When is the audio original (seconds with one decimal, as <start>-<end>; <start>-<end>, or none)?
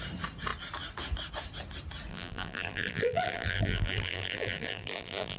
0.0-2.1